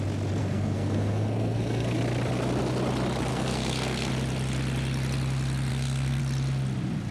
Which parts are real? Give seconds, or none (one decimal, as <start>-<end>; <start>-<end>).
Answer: 0.0-0.4; 2.0-3.3; 4.1-5.7; 6.2-7.1

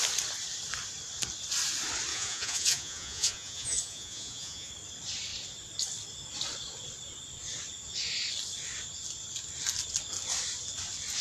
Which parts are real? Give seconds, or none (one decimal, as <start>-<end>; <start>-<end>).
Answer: 0.0-2.1; 4.7-11.2

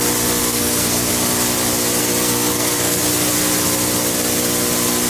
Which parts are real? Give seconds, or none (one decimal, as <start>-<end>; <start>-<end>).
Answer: 0.0-0.4; 1.1-2.0; 3.0-5.1

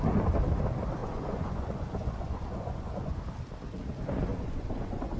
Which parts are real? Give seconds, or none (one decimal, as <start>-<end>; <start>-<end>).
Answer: 0.0-1.0; 3.2-4.3